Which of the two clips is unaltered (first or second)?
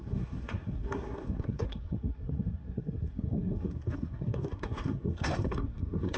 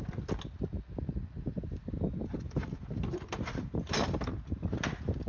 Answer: second